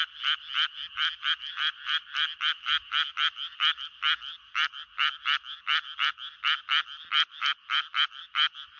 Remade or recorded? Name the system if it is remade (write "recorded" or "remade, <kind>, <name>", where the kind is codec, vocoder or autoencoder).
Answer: recorded